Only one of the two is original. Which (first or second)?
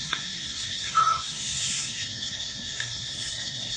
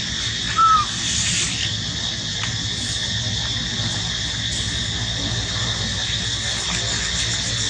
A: second